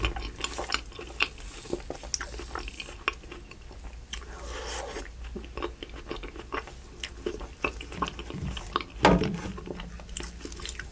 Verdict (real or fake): real